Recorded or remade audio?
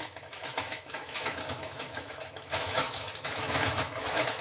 remade